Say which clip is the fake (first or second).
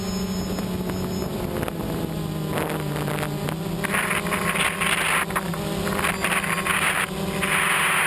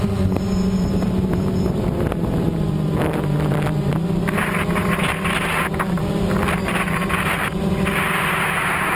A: second